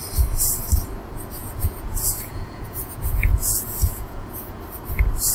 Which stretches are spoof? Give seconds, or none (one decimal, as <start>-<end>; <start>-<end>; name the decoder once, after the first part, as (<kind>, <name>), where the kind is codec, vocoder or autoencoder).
1.4-4.6 (vocoder, Vocos)